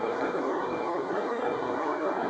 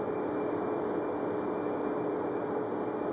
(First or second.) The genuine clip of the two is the second